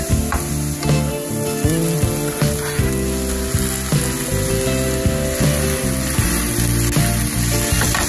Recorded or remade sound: recorded